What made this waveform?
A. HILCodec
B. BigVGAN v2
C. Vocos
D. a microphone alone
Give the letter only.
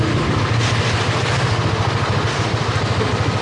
D